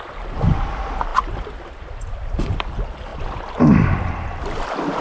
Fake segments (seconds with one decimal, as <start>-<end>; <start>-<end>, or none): 3.1-4.4